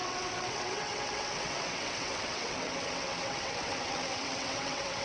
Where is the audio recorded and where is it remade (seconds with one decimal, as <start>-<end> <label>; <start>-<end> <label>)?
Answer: 0.0-5.0 remade